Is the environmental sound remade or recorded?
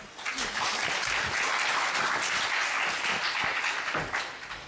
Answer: recorded